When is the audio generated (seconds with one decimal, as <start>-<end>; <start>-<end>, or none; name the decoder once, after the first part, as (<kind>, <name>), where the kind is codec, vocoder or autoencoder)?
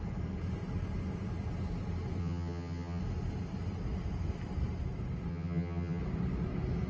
2.2-3.0 (vocoder, HiFi-GAN); 5.3-6.0